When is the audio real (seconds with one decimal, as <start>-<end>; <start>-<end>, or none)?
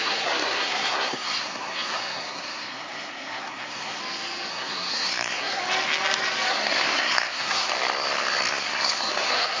4.0-4.5; 5.6-6.5; 7.7-8.5